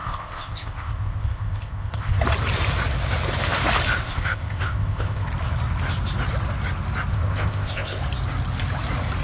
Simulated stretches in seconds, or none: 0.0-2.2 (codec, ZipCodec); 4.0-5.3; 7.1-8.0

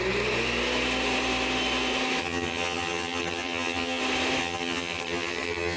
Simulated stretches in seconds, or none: 2.2-4.0 (vocoder, HiFi-GAN); 4.4-5.8

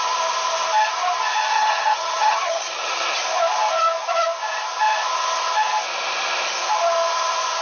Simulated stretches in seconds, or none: 1.5-3.1 (vocoder, HiFi-GAN)

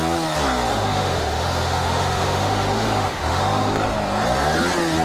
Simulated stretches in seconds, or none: 0.7-3.7 (autoencoder, DAC-VAE)

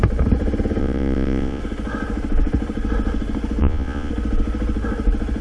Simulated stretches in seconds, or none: 0.8-1.6 (vocoder, Vocos); 3.6-4.1

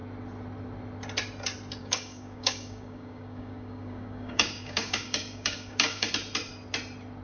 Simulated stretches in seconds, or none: 1.8-6.1 (codec, DAC)

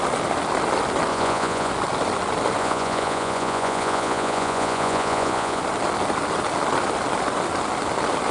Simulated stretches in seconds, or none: 1.1-1.7 (vocoder, Vocos); 2.6-5.6